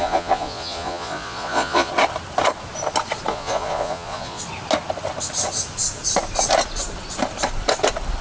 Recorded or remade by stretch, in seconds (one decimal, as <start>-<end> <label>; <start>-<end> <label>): 0.0-1.9 remade; 1.9-3.3 recorded; 3.3-4.4 remade; 4.4-8.2 recorded